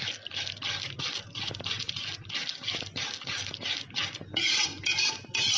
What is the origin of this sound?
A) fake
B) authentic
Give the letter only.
B